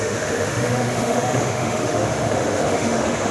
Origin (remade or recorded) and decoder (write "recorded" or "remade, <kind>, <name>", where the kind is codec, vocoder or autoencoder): remade, autoencoder, DAC-VAE